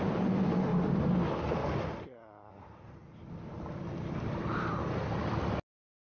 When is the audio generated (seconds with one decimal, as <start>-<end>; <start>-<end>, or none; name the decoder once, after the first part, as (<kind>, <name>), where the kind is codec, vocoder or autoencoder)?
0.0-0.7 (vocoder, BigVGAN v2); 2.5-3.0